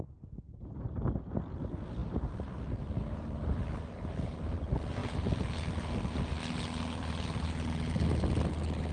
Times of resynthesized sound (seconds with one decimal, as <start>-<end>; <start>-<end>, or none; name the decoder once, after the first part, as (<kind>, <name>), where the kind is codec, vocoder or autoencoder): none

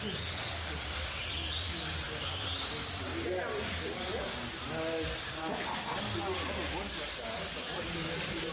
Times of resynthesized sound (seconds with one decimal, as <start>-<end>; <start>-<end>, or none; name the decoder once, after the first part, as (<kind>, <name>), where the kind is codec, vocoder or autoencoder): none

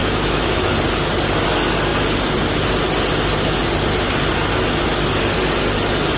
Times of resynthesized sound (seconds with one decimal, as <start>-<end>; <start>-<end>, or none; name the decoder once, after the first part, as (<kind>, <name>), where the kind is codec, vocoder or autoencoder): 0.0-0.7 (autoencoder, DAC-VAE)

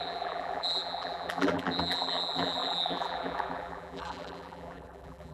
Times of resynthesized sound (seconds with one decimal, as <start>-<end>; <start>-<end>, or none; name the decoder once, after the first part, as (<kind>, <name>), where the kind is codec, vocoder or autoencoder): 0.0-5.3 (vocoder, BigVGAN v2)

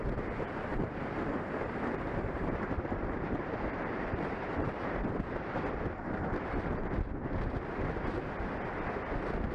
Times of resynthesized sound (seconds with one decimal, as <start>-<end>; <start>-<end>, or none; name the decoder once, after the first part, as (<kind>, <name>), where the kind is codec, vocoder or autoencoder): 0.7-5.6 (vocoder, BigVGAN v2)

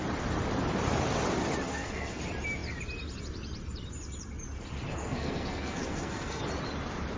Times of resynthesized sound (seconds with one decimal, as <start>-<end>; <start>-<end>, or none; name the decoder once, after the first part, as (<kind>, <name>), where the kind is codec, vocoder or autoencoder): 1.7-2.2 (codec, SNAC); 4.9-6.4